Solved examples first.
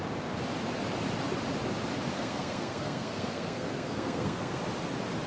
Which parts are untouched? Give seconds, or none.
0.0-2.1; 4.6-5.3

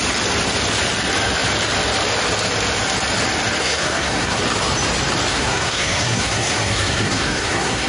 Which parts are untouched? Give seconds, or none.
0.0-3.6; 4.4-5.3

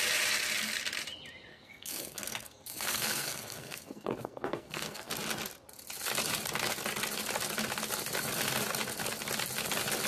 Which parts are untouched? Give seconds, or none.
0.0-1.5; 5.1-10.1

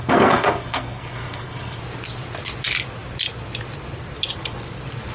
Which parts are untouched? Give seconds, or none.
1.8-5.1